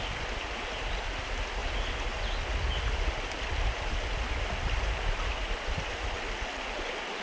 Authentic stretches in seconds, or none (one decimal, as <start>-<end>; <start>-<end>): 0.0-7.2